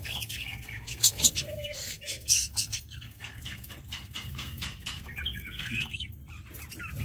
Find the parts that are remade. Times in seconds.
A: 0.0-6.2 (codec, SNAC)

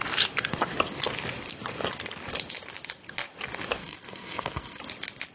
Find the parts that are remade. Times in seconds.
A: 3.8-4.8 (codec, SNAC)

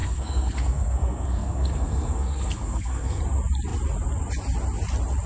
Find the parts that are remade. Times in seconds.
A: 0.0-3.2 (codec, SNAC)

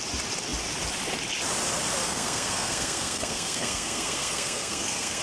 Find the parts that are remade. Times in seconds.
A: 2.0-5.2 (codec, SNAC)

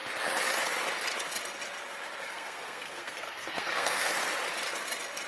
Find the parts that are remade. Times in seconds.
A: 2.3-4.1 (codec, SNAC)

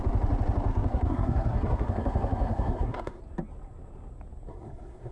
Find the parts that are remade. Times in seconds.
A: 0.7-3.2 (codec, SNAC); 4.5-5.1

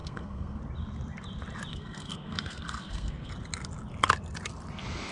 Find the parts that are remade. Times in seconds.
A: 0.0-0.6 (codec, SNAC); 1.7-3.3

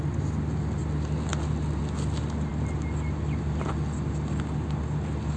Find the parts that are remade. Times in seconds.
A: none